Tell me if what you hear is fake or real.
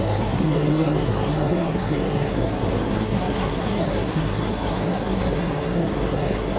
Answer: fake